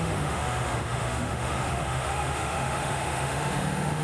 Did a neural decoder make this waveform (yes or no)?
yes